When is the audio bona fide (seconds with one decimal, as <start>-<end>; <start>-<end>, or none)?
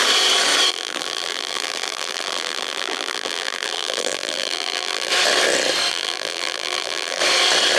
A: 0.0-0.7; 5.1-5.9; 7.2-7.8